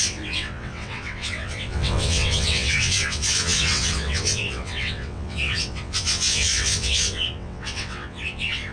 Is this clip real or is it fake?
fake